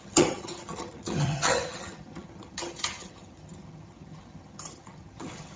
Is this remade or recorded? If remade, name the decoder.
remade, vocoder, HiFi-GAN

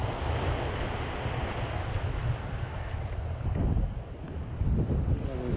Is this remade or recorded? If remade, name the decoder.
recorded